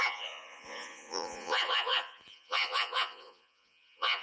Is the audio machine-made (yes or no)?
yes